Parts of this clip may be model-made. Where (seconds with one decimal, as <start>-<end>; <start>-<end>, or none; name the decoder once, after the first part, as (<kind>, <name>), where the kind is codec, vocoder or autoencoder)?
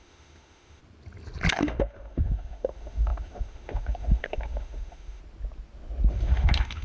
0.0-0.8 (autoencoder, DAC-VAE); 1.5-5.2; 6.1-6.8